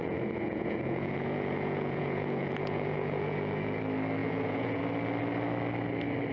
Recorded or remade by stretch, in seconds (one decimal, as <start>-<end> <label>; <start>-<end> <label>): 0.0-3.8 remade; 3.8-4.2 recorded; 4.2-4.8 remade; 4.8-6.3 recorded